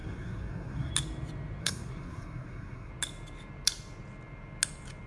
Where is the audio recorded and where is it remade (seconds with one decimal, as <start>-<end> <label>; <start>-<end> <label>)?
0.0-0.9 remade; 0.9-1.6 recorded; 1.6-2.9 remade; 2.9-5.1 recorded